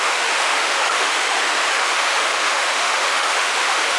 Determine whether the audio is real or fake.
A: fake